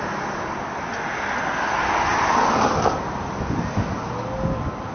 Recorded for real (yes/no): yes